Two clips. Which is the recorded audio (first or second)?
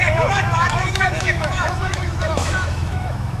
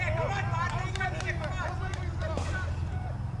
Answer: second